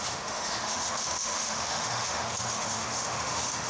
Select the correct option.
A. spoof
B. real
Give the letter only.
A